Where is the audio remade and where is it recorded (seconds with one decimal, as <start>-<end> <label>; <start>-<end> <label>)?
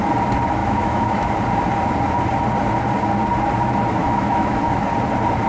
0.0-0.6 recorded; 0.6-1.3 remade; 1.3-4.0 recorded; 4.0-4.8 remade; 4.8-5.5 recorded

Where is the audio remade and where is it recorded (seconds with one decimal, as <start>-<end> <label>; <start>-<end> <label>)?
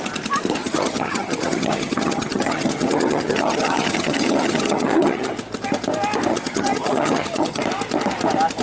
0.0-0.6 recorded; 0.6-5.3 remade; 5.3-6.3 recorded; 6.3-7.6 remade; 7.6-8.6 recorded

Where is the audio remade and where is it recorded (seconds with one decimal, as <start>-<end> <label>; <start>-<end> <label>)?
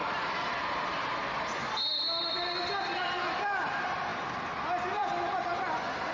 0.0-2.2 recorded; 2.2-6.1 remade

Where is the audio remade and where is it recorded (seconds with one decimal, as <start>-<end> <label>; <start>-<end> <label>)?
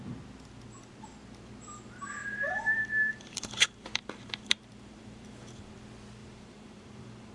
0.0-2.2 recorded; 2.2-5.7 remade; 5.7-6.2 recorded; 6.2-7.3 remade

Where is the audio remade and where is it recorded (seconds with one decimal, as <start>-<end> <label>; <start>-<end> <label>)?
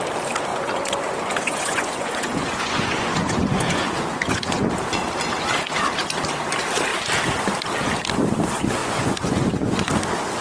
0.0-0.5 recorded; 0.5-4.7 remade; 4.7-8.8 recorded; 8.8-9.9 remade; 9.9-10.4 recorded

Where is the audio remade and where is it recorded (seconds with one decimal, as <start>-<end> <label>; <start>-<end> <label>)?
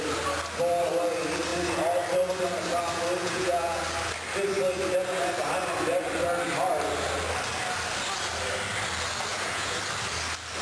0.0-3.2 recorded; 3.2-3.8 remade; 3.8-9.3 recorded; 9.3-9.8 remade; 9.8-10.6 recorded